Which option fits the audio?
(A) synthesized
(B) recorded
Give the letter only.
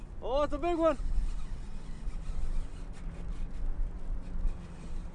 B